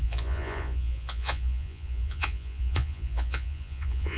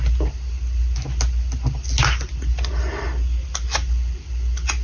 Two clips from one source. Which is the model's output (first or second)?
first